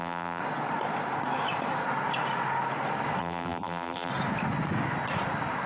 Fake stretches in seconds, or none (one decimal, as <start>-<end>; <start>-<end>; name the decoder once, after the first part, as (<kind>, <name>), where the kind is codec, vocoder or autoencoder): 0.0-0.4 (vocoder, BigVGAN v2); 3.2-4.1